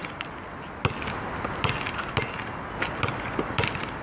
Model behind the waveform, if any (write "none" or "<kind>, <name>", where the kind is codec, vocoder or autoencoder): none